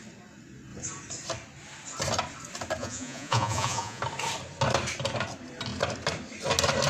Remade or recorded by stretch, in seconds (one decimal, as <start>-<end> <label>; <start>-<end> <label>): 0.0-2.8 recorded; 2.8-4.0 remade; 4.0-6.9 recorded